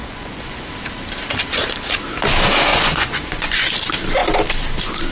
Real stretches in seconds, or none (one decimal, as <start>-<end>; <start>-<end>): 0.7-2.7; 3.8-5.1